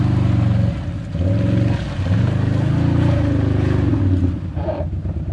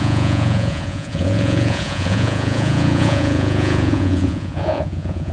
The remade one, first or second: second